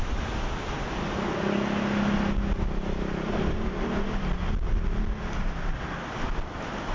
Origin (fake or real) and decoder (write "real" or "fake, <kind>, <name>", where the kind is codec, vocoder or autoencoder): real